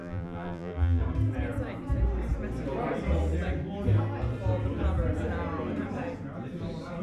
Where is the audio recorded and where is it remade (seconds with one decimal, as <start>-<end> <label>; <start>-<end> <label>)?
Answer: 0.0-1.0 remade; 1.0-7.0 recorded